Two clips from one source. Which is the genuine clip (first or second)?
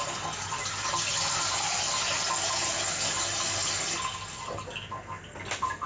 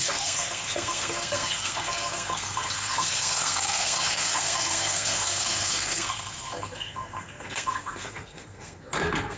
first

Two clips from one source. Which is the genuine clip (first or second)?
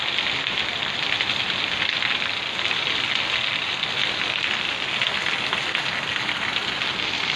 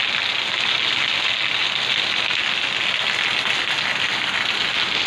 second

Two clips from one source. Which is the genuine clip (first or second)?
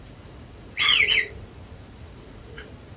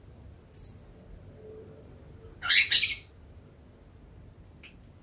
second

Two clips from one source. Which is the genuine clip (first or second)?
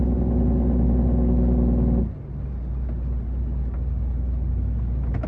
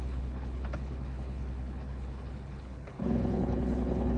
first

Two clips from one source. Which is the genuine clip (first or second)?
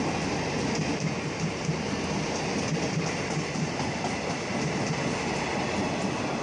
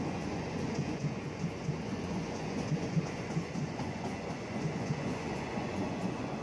first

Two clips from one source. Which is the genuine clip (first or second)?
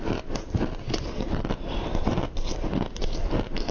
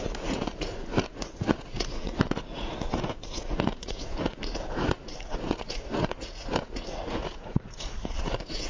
first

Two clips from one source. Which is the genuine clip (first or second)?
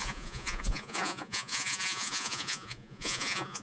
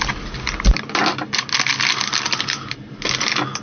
second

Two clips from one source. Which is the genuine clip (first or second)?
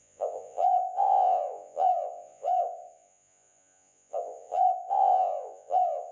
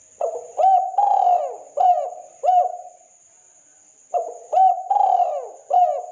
second